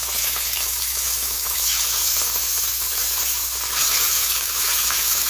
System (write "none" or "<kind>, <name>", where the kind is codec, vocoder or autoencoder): autoencoder, DAC-VAE